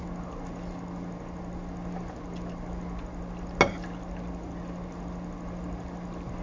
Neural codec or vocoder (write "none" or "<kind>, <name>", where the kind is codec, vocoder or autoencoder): none